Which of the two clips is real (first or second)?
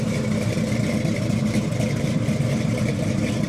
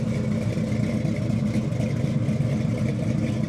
second